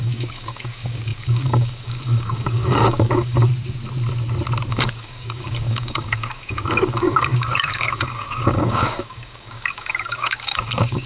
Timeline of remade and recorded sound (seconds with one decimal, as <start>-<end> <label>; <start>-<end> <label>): 0.0-3.5 remade; 3.5-4.7 recorded; 4.7-11.1 remade